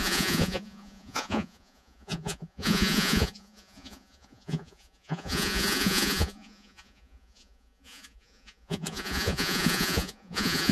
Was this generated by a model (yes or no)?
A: yes